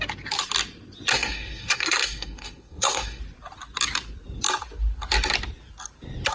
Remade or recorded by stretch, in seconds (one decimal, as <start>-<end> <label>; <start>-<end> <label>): 0.0-1.1 recorded; 1.1-3.2 remade; 3.2-6.3 recorded